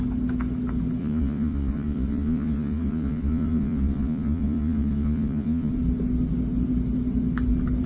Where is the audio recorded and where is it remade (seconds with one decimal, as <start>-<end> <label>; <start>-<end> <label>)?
0.0-1.0 recorded; 1.0-5.7 remade; 5.7-7.9 recorded